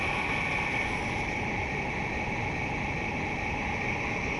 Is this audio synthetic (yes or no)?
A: no